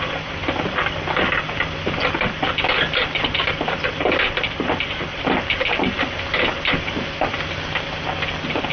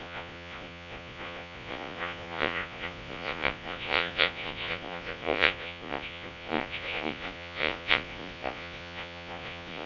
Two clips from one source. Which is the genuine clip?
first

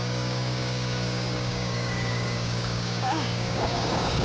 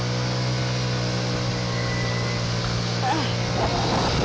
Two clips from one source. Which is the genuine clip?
second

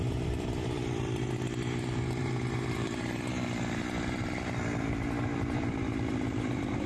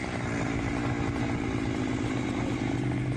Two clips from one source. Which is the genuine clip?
second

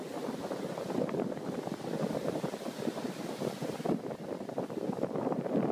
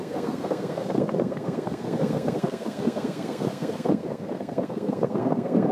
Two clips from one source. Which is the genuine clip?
first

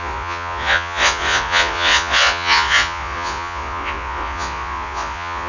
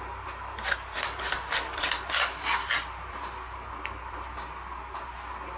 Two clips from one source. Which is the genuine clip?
second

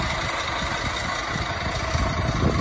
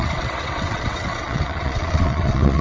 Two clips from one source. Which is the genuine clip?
first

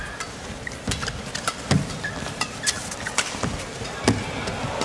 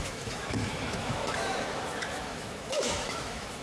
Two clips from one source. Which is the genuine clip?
first